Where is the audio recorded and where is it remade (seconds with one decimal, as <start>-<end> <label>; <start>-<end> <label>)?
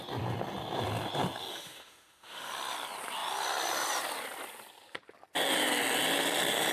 0.0-1.5 recorded; 1.5-2.5 remade; 2.5-6.7 recorded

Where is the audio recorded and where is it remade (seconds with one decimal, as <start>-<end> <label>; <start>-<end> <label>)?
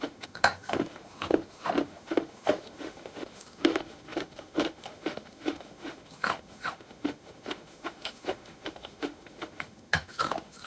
0.0-10.7 remade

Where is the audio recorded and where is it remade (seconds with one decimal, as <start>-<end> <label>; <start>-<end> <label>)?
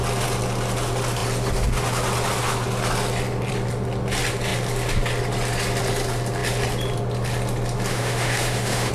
0.0-7.9 recorded; 7.9-8.9 remade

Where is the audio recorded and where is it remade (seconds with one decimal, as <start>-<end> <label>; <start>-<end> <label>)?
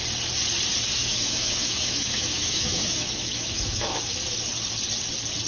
0.0-0.9 recorded; 0.9-4.2 remade; 4.2-5.5 recorded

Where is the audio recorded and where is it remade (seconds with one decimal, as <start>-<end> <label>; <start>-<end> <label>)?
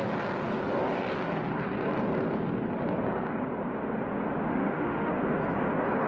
0.0-4.5 recorded; 4.5-5.1 remade; 5.1-6.1 recorded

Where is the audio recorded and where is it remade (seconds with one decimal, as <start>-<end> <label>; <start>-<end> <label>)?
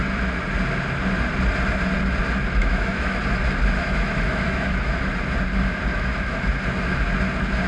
0.0-2.6 recorded; 2.6-3.2 remade; 3.2-3.8 recorded; 3.8-5.1 remade; 5.1-5.9 recorded; 5.9-6.5 remade; 6.5-7.7 recorded